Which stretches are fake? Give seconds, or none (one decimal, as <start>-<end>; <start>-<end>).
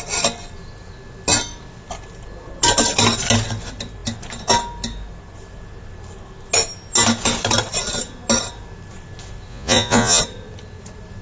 9.5-10.2